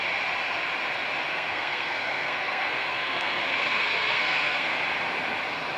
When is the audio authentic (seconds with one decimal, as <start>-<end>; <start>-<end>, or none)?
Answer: 0.0-1.3; 4.8-5.8

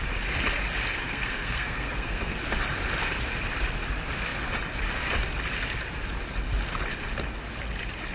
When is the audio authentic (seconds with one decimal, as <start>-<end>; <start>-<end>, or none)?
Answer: 0.0-1.0; 2.4-8.1

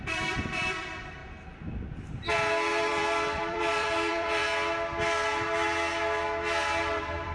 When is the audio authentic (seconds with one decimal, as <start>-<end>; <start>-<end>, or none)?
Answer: 1.2-2.8; 4.4-6.8

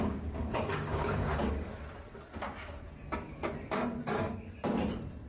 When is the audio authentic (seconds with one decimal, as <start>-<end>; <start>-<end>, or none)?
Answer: 1.7-5.3

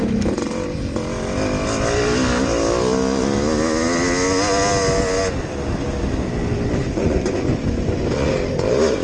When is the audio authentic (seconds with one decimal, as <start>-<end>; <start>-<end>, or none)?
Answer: 0.0-6.8; 8.3-9.0